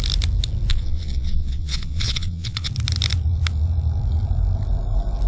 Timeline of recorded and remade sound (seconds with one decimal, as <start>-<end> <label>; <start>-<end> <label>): 0.0-0.7 recorded; 0.7-2.7 remade; 2.7-5.3 recorded